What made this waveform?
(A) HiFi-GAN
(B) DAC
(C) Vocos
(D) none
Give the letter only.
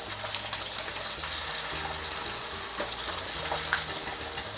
D